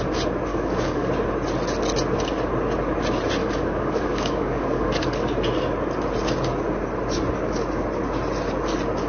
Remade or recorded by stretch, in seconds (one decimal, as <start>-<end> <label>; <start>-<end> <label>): 0.0-0.5 recorded; 0.5-1.1 remade; 1.1-3.4 recorded; 3.4-5.3 remade; 5.3-9.1 recorded